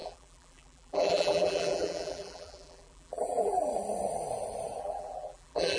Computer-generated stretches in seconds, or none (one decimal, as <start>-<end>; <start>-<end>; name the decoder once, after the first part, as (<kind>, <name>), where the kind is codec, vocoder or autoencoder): 0.0-3.7 (vocoder, BigVGAN v2); 4.8-5.8